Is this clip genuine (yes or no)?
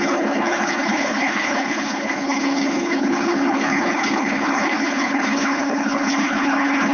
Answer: no